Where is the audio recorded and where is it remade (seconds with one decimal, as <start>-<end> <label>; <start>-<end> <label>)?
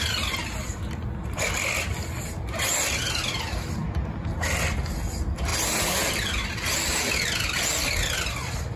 0.0-8.8 recorded